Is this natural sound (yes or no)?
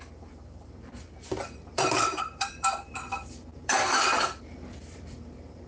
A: no